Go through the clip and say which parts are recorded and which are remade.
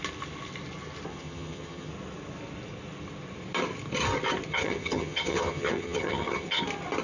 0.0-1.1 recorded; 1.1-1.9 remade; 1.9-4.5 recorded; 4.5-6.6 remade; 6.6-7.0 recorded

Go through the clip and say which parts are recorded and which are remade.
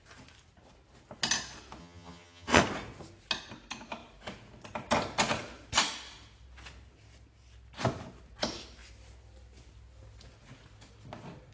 0.0-1.8 recorded; 1.8-2.6 remade; 2.6-11.5 recorded